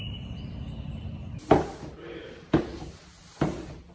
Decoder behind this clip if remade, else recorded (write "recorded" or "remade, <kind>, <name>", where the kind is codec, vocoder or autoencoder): recorded